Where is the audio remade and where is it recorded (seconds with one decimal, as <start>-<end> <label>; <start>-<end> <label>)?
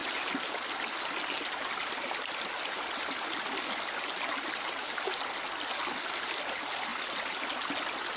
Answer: 0.0-8.2 recorded